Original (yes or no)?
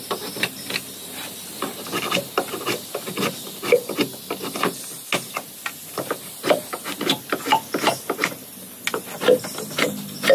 yes